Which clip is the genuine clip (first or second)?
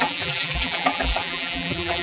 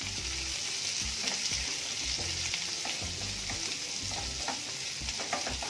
second